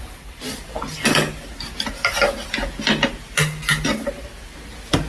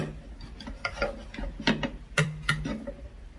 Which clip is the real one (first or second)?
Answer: first